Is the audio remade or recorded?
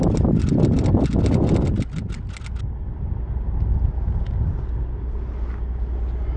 recorded